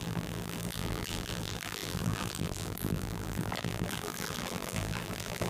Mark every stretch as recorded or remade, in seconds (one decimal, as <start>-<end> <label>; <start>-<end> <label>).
0.0-5.5 remade